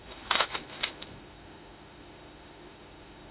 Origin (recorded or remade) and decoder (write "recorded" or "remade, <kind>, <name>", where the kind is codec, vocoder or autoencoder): remade, autoencoder, DAC-VAE